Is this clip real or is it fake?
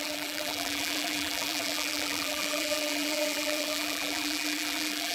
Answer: fake